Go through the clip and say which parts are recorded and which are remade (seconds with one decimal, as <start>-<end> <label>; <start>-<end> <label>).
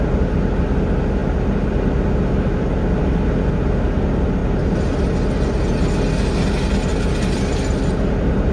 0.0-8.5 recorded